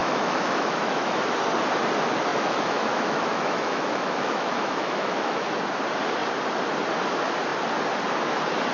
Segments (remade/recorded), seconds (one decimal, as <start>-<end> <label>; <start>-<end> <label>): 0.0-1.1 remade; 1.1-2.3 recorded; 2.3-5.5 remade; 5.5-8.7 recorded